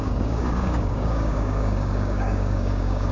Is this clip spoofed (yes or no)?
yes